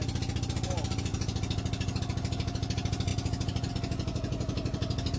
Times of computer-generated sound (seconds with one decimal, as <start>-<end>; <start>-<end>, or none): none